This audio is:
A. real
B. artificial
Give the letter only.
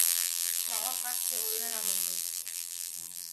B